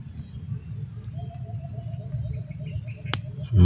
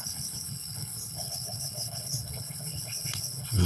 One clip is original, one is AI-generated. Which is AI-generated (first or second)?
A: second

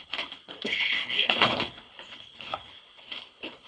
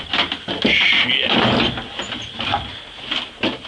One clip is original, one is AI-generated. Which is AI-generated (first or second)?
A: first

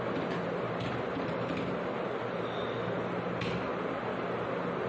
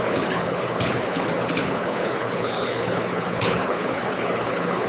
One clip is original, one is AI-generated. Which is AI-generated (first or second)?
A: second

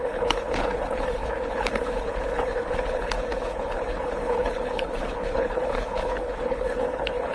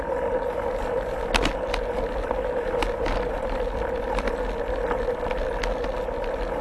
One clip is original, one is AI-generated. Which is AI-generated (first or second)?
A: first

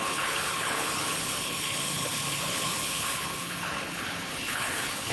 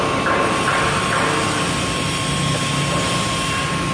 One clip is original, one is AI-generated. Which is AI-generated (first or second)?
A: first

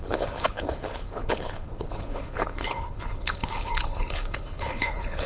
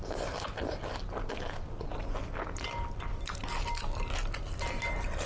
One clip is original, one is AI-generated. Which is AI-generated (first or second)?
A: first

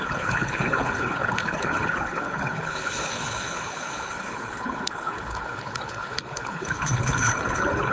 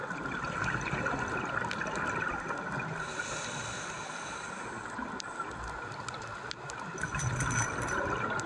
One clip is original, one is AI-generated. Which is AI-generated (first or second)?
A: first